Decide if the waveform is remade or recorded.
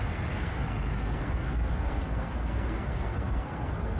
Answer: remade